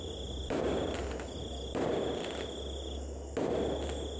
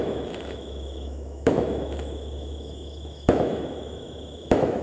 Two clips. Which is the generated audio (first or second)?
second